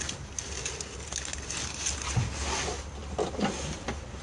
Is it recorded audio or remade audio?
recorded